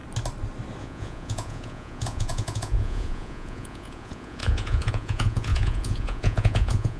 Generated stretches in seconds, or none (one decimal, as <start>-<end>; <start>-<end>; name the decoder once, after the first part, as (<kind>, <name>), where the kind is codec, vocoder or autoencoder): 0.8-7.0 (vocoder, Vocos)